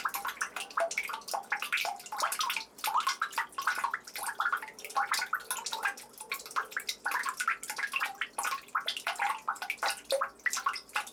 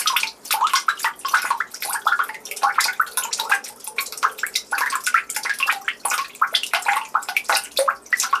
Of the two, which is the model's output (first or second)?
second